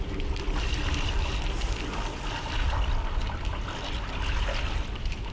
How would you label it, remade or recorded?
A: recorded